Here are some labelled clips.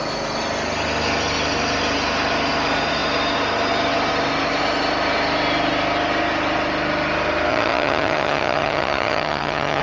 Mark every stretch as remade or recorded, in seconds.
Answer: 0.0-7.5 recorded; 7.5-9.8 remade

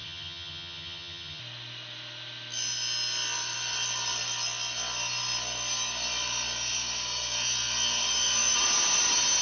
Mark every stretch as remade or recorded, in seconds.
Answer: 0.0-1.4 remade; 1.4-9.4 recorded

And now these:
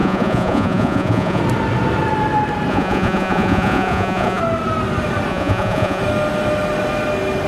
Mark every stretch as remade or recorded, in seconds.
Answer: 0.0-1.4 remade; 1.4-2.7 recorded; 2.7-4.4 remade; 4.4-5.3 recorded; 5.3-6.0 remade; 6.0-7.5 recorded

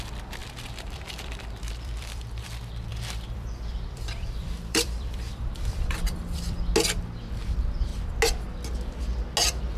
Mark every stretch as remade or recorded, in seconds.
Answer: 0.0-0.4 recorded; 0.4-2.4 remade; 2.4-2.9 recorded; 2.9-6.5 remade; 6.5-9.8 recorded

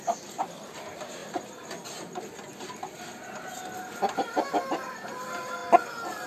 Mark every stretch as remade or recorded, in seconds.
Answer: 0.0-6.3 recorded

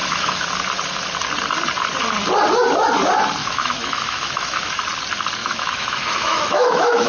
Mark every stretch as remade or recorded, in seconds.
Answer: 0.0-0.5 remade; 0.5-3.4 recorded; 3.4-4.8 remade; 4.8-5.4 recorded; 5.4-7.1 remade